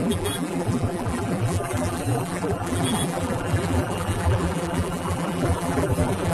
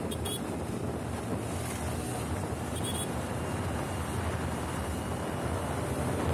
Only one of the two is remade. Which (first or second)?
first